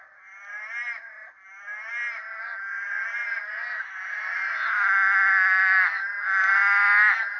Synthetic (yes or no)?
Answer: no